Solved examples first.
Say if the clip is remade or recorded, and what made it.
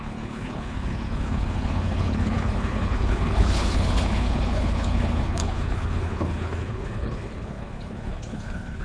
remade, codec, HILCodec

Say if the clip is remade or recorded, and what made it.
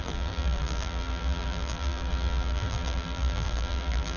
remade, vocoder, BigVGAN v2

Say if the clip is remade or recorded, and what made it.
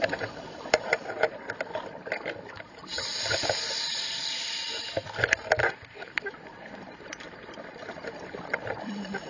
remade, vocoder, BigVGAN v2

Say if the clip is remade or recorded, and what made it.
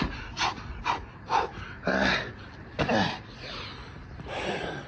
recorded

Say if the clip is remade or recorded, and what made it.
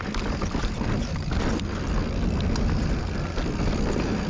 recorded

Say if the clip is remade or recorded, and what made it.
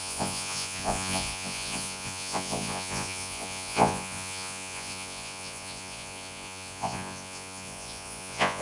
remade, vocoder, Vocos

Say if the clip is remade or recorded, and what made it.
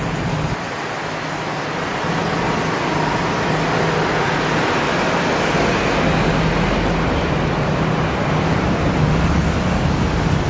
recorded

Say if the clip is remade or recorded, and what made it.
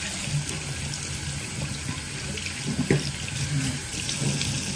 recorded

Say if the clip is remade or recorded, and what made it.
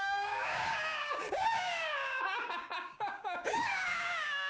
remade, codec, DAC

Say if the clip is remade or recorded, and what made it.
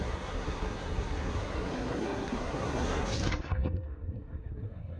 remade, codec, SNAC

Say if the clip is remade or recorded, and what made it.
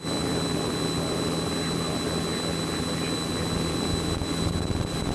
recorded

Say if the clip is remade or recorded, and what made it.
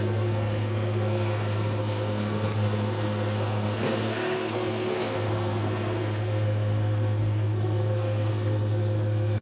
remade, codec, SNAC